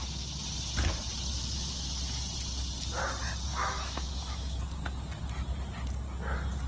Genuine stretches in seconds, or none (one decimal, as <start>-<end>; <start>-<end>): 0.0-1.3; 1.9-3.5; 4.6-6.7